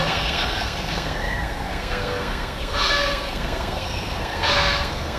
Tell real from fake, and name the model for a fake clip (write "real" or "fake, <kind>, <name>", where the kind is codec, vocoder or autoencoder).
fake, codec, SNAC